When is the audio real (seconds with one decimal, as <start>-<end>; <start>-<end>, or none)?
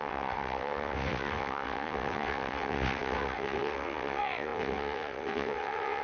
none